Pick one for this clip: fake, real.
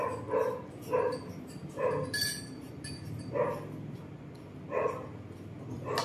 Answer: real